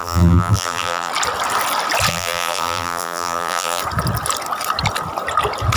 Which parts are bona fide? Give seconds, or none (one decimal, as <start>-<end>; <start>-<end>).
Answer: 1.1-2.1; 3.8-5.8